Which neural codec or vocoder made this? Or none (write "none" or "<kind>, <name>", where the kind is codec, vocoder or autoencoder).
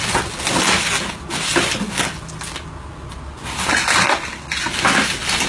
none